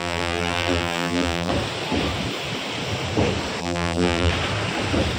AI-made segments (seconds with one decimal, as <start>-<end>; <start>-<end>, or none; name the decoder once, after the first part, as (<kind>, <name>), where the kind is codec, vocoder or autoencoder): 0.0-1.5 (vocoder, BigVGAN v2); 3.6-4.3